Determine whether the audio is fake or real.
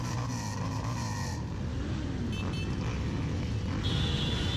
real